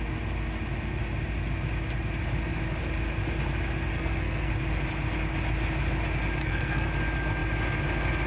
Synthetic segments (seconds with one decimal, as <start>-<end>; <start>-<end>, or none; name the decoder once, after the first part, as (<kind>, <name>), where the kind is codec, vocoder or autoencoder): 3.9-4.5 (codec, SNAC); 6.4-6.9